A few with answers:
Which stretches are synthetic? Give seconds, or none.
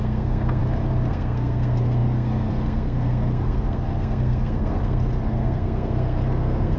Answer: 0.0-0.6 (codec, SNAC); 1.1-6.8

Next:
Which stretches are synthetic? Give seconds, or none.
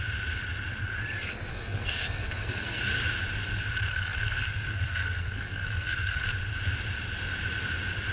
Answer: 1.5-2.8 (codec, SNAC); 3.9-6.2